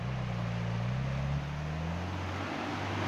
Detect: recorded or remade recorded